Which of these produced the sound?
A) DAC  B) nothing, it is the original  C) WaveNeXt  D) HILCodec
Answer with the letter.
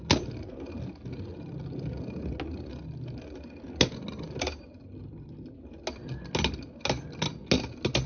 B